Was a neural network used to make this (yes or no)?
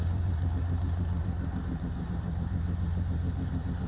yes